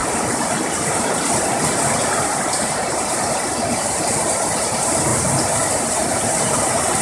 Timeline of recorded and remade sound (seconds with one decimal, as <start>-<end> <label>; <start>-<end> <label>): 0.0-5.1 remade; 5.1-5.7 recorded; 5.7-7.0 remade